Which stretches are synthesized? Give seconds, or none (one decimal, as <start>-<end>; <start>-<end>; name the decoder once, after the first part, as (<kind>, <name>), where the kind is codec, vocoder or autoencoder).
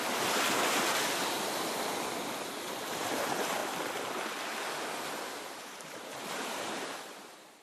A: 0.0-3.6 (vocoder, BigVGAN v2); 5.1-7.6